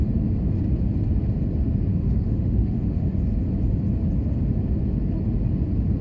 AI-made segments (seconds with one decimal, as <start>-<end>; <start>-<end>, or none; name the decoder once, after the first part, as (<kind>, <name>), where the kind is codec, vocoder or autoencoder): 1.9-3.1 (autoencoder, DAC-VAE)